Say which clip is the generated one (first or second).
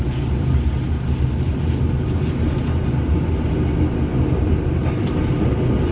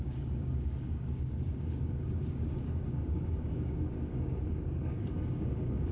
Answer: second